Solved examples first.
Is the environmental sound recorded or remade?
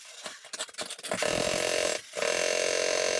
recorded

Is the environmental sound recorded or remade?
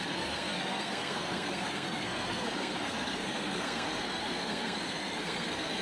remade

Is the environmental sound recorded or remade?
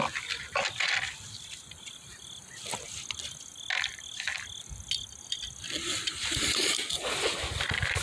recorded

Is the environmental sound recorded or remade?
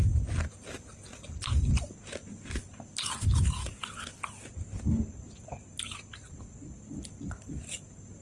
recorded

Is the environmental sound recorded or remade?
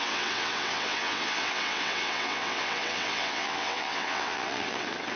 remade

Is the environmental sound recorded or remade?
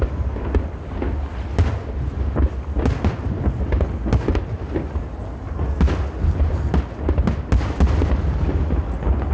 recorded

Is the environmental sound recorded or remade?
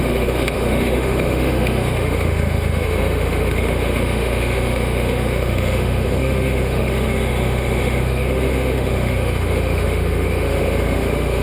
remade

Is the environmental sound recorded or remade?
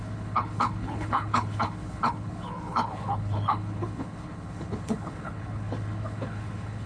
remade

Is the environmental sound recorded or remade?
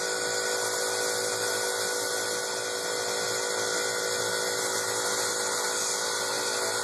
recorded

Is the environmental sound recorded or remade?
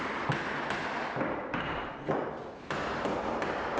recorded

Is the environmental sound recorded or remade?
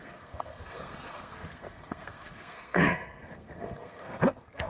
remade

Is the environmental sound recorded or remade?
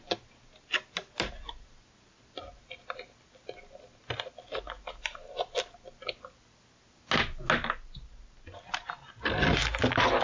recorded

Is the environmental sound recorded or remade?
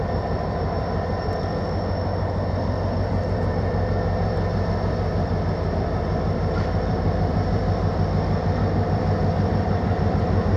remade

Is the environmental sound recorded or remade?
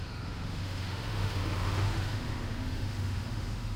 remade